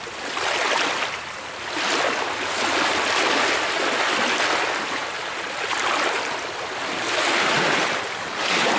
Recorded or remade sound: recorded